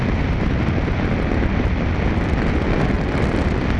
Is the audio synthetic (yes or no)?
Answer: no